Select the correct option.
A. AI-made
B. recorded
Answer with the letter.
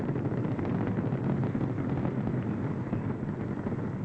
B